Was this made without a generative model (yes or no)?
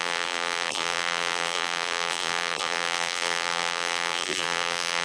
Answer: no